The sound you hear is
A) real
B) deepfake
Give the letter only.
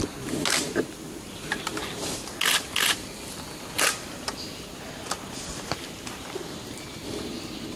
A